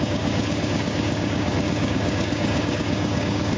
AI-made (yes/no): yes